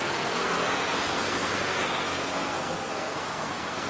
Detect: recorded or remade remade